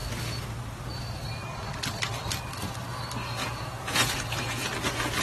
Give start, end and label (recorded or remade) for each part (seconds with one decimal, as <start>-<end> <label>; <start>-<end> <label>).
0.0-3.4 recorded; 3.4-4.7 remade; 4.7-5.2 recorded